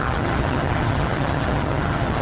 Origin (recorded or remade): remade